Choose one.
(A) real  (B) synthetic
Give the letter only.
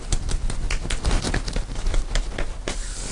A